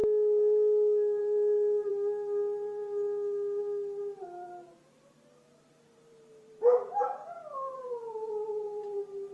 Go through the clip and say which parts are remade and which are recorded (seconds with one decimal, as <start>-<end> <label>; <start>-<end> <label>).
0.0-1.2 recorded; 1.2-1.9 remade; 1.9-5.7 recorded; 5.7-9.3 remade